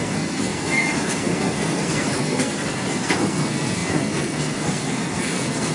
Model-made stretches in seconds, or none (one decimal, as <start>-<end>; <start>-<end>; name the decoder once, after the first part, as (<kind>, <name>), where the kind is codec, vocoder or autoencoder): 0.0-5.7 (codec, SNAC)